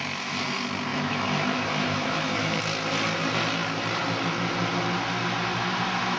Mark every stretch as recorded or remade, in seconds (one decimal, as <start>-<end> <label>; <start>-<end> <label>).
0.0-0.9 recorded; 0.9-2.6 remade; 2.6-6.2 recorded